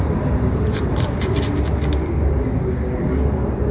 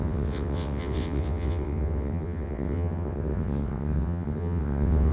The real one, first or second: first